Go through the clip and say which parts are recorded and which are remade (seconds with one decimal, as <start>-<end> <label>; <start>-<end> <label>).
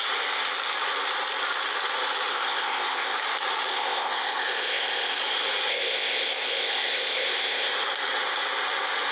0.0-2.3 recorded; 2.3-3.2 remade; 3.2-3.7 recorded; 3.7-5.2 remade; 5.2-5.7 recorded; 5.7-7.7 remade; 7.7-9.1 recorded